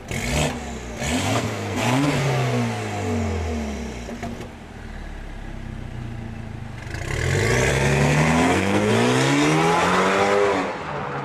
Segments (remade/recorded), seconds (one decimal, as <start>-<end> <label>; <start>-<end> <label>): 0.0-1.2 recorded; 1.2-2.1 remade; 2.1-7.7 recorded; 7.7-8.9 remade; 8.9-11.2 recorded